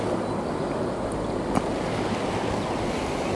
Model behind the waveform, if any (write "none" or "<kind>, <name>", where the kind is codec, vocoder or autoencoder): none